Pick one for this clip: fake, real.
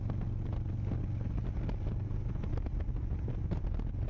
real